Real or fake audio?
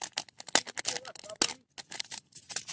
real